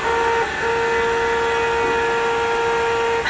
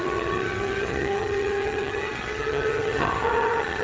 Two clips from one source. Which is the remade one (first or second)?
second